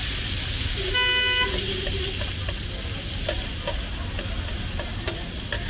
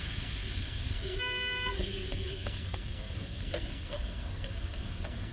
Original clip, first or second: first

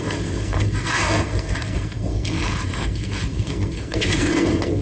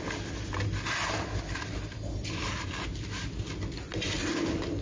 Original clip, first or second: second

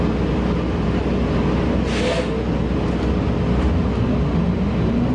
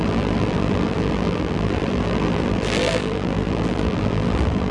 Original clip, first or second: first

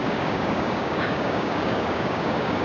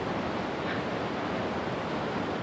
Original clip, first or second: second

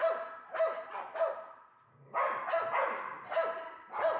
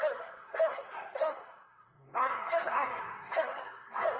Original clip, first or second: first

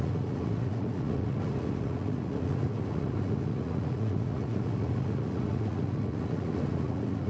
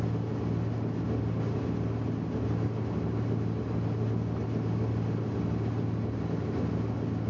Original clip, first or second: second